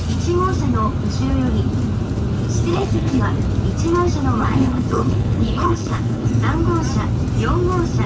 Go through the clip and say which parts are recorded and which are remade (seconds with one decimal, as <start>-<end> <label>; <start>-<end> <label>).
0.0-2.7 recorded; 2.7-3.2 remade; 3.2-4.4 recorded; 4.4-6.3 remade; 6.3-8.1 recorded